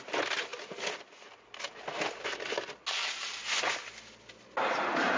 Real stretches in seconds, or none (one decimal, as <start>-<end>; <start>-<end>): 0.0-5.2